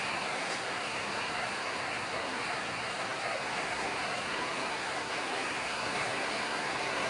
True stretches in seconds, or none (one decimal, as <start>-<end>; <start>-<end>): none